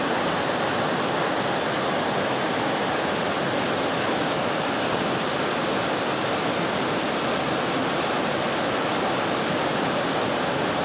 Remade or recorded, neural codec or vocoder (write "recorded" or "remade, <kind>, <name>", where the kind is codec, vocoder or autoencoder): recorded